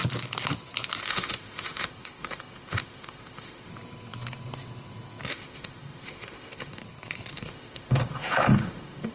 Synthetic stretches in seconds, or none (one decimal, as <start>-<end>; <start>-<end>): 1.0-3.7; 5.3-6.8; 7.3-9.1